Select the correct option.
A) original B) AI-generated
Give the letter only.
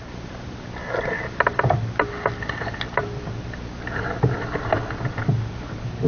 A